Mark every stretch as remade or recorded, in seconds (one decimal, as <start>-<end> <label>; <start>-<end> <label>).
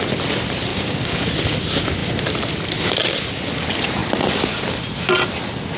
0.0-0.7 recorded; 0.7-1.2 remade; 1.2-5.8 recorded